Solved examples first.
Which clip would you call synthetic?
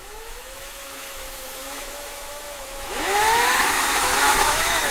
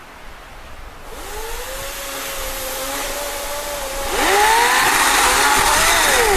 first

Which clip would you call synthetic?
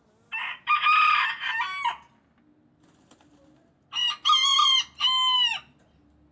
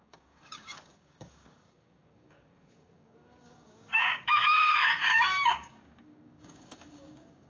second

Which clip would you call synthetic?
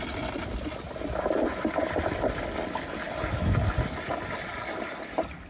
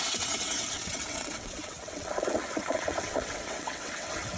second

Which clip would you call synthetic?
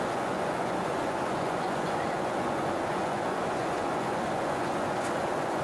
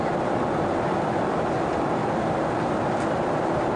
first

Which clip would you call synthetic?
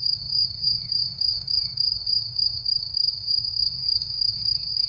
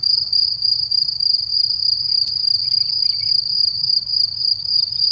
first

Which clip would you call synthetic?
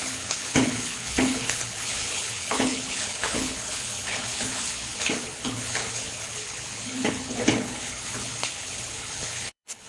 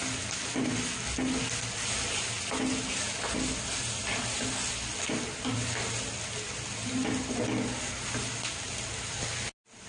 first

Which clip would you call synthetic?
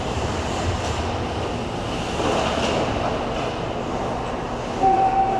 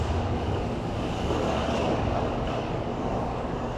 second